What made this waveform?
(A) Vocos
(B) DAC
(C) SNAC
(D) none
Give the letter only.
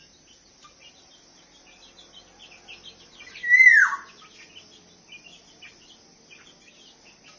D